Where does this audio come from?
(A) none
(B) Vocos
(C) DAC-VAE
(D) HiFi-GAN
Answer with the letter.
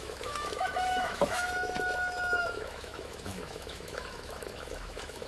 C